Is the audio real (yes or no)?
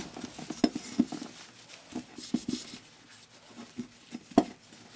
yes